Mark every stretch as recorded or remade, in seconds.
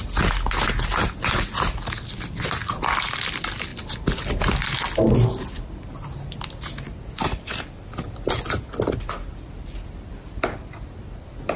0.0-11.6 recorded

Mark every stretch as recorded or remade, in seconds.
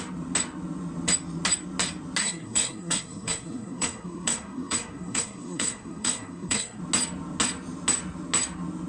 0.0-2.2 recorded; 2.2-6.8 remade; 6.8-8.9 recorded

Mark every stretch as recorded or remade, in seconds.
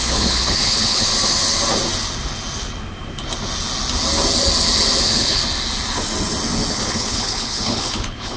0.0-1.1 remade; 1.1-5.0 recorded; 5.0-5.4 remade; 5.4-6.7 recorded; 6.7-8.4 remade